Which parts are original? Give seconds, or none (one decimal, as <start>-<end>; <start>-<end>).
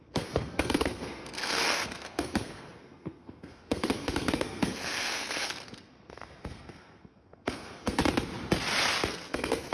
8.0-9.1